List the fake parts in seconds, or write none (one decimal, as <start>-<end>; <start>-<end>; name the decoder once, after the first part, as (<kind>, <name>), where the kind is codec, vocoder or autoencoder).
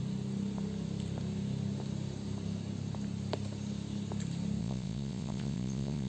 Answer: 4.6-6.1 (vocoder, Vocos)